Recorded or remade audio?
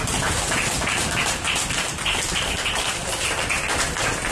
recorded